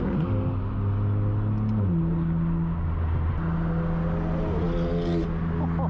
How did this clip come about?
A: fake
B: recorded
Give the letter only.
B